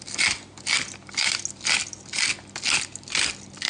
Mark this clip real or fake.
real